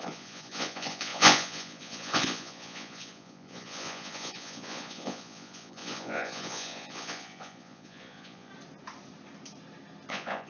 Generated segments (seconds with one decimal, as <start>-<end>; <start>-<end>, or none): 0.0-8.5; 10.1-10.5